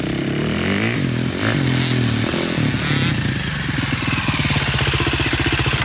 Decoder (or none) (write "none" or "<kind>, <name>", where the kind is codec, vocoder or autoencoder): none